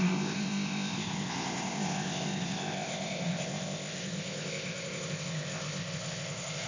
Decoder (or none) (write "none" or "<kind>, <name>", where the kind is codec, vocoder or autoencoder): codec, ZipCodec